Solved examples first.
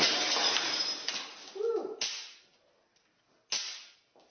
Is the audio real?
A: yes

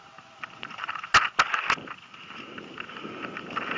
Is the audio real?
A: yes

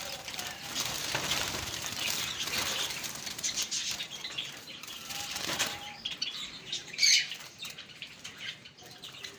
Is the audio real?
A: no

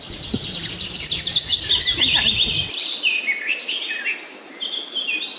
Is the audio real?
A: yes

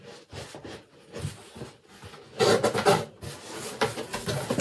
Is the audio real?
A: yes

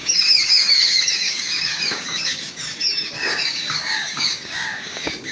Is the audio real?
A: no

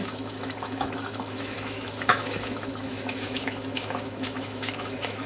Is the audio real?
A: no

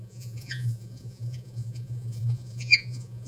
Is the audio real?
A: no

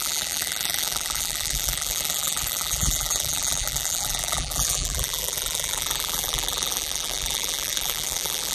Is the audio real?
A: no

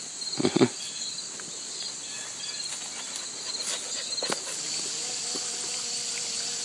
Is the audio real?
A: yes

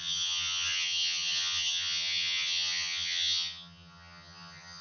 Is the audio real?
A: no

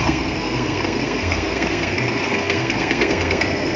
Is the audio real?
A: no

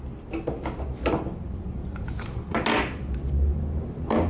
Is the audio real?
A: yes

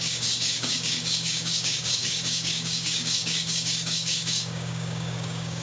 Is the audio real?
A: no